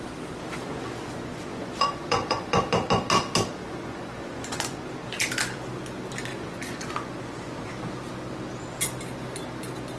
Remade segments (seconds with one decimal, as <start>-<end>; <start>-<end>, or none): 0.7-2.6; 3.6-4.8; 6.3-7.7

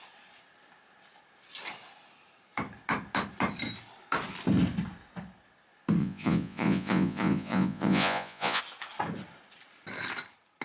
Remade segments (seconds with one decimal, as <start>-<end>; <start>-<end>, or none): 6.0-8.6

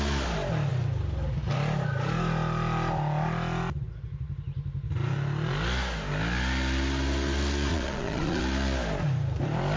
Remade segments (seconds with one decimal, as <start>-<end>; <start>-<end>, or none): 7.7-8.4

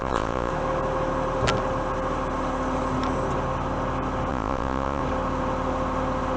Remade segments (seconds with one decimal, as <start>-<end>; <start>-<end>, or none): 0.0-0.5; 4.3-5.0

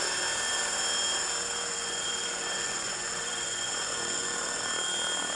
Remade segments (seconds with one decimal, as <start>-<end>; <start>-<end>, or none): 1.7-4.6

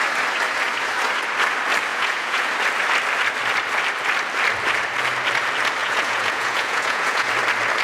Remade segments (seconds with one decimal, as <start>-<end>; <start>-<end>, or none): 1.9-2.5; 5.8-7.3